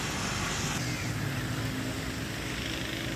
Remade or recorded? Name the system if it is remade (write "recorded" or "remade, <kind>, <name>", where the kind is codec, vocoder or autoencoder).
recorded